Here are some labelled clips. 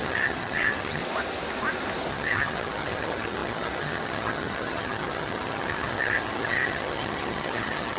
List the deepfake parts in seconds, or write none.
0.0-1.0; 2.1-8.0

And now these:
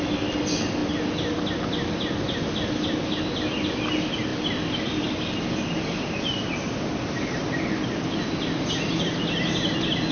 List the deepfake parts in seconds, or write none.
none

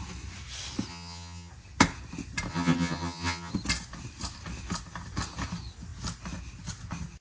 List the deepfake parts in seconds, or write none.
0.9-1.5; 2.5-3.5

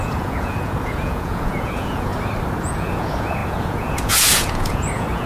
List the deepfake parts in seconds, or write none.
0.0-2.1; 2.6-5.3

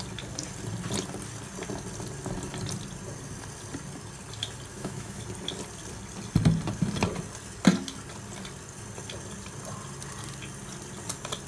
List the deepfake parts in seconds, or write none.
4.7-5.2

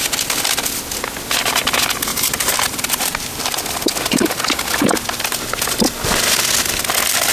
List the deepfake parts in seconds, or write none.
2.1-3.6

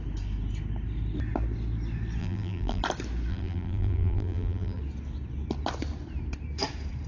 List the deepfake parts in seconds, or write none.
2.2-2.8; 3.3-4.8

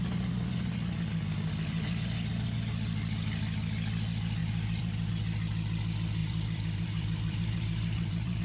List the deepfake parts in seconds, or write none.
4.4-5.1; 6.2-8.4